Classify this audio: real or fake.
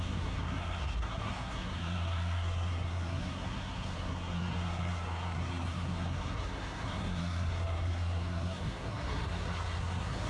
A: fake